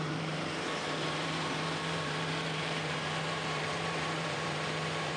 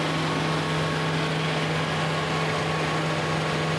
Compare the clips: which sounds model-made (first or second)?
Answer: first